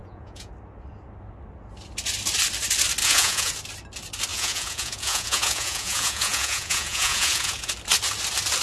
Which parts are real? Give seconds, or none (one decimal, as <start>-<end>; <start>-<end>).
0.5-3.0; 3.5-4.3; 7.7-8.6